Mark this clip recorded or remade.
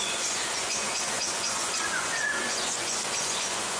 remade